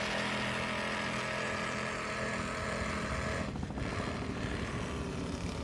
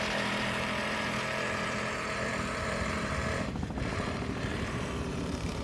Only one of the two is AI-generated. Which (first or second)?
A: second